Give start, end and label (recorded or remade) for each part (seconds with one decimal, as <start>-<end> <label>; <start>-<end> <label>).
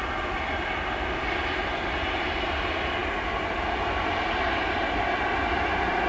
0.0-6.1 recorded